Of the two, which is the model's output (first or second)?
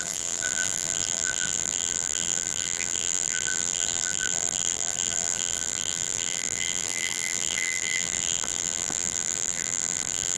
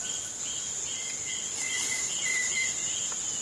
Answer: first